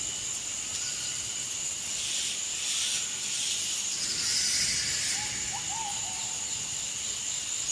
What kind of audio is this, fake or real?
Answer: real